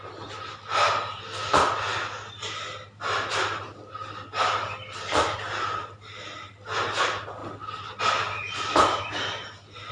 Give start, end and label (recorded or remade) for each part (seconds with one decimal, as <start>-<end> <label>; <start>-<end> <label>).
0.0-9.9 recorded